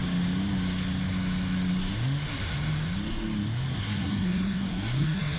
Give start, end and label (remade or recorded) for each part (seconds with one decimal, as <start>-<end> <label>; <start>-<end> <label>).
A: 0.0-3.8 recorded; 3.8-5.4 remade